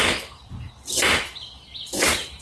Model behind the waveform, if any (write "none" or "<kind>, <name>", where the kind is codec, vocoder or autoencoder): none